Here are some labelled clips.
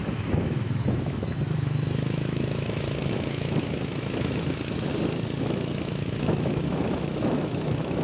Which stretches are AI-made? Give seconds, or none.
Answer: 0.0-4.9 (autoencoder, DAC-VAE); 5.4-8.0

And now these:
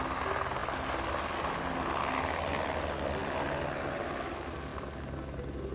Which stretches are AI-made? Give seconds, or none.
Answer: none

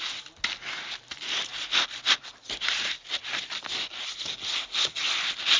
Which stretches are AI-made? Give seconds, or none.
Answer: none

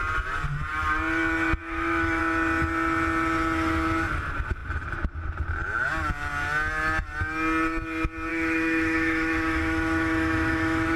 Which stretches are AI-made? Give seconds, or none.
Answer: 1.6-2.2 (autoencoder, DAC-VAE); 8.3-11.0

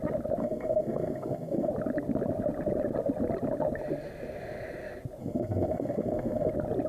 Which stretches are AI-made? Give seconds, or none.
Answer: 0.4-1.7 (codec, SNAC); 5.2-6.5

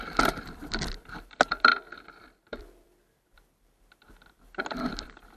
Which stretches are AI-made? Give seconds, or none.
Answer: 0.0-1.7 (vocoder, BigVGAN v2); 2.6-5.4

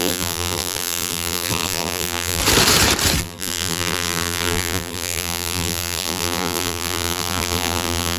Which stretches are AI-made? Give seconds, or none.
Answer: 0.0-2.4 (vocoder, BigVGAN v2); 3.2-8.2

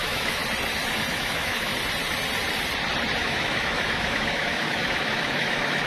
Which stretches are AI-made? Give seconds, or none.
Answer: 0.0-0.4 (autoencoder, DAC-VAE); 1.1-1.7; 3.2-5.9